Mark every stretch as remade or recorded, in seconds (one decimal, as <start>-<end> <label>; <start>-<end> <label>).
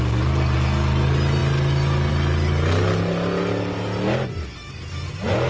0.0-5.5 recorded